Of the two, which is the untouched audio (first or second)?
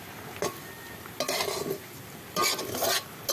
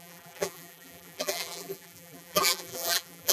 first